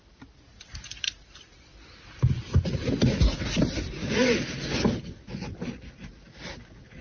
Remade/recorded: recorded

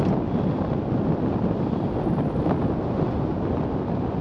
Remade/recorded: recorded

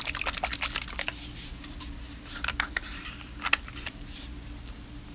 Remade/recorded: recorded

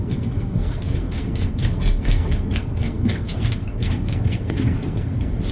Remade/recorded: remade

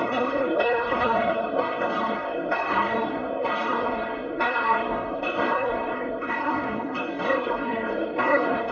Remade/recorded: remade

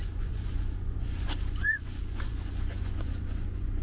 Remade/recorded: remade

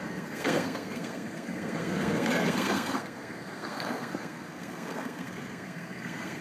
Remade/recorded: remade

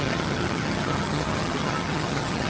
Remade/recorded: remade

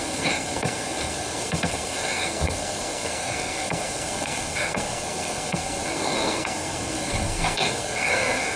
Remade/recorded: remade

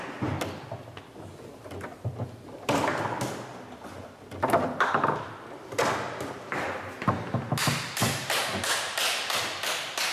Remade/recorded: recorded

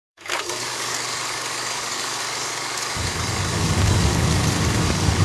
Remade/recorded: remade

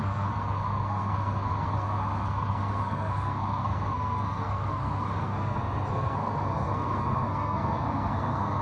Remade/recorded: remade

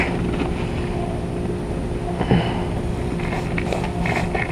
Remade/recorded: recorded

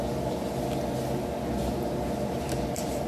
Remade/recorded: recorded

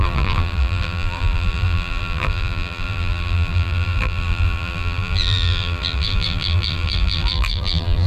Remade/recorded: remade